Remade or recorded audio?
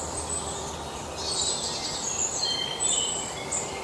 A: remade